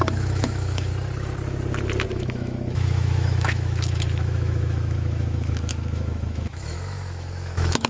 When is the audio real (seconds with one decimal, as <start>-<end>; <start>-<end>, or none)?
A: 0.9-2.1